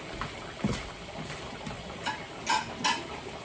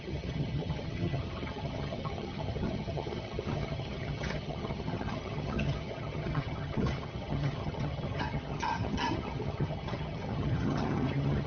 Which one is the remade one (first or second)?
second